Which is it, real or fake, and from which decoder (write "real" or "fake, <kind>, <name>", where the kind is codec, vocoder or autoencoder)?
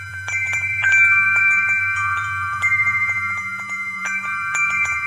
fake, vocoder, BigVGAN v2